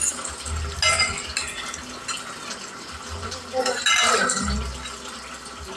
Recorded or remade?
recorded